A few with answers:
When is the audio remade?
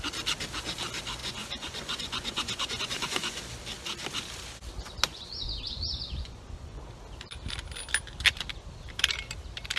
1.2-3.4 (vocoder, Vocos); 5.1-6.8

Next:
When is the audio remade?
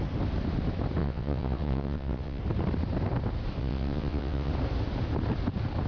1.0-2.4 (vocoder, WaveNeXt); 3.6-4.5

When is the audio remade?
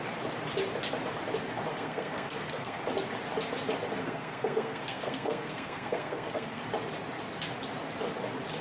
1.7-2.8 (codec, SNAC); 4.0-6.6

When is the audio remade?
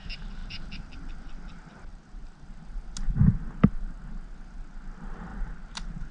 0.4-1.1 (vocoder, BigVGAN v2); 1.9-2.5